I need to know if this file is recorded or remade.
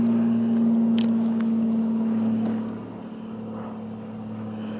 recorded